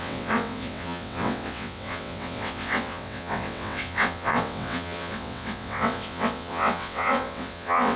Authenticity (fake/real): fake